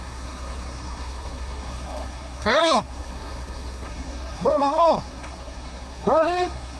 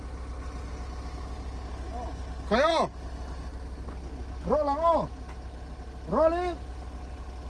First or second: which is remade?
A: first